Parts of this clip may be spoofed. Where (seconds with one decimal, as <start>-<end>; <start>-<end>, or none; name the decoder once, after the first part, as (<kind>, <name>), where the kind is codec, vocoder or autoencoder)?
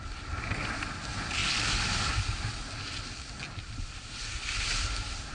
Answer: none